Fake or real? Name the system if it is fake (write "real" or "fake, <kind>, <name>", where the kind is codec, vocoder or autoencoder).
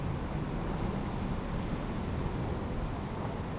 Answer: real